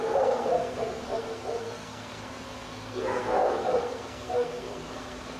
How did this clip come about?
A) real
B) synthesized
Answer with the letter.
B